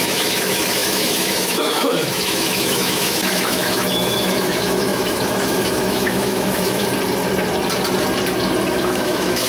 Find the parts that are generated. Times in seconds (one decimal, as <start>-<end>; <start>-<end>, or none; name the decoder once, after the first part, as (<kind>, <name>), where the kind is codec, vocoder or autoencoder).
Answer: 0.0-6.9 (autoencoder, DAC-VAE); 8.7-9.5